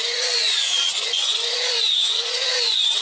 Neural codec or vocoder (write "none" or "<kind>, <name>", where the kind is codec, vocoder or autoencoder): vocoder, Vocos